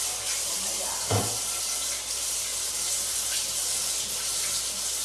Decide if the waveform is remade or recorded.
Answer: recorded